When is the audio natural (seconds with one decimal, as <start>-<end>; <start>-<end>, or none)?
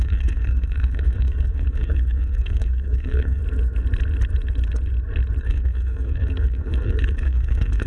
3.4-5.4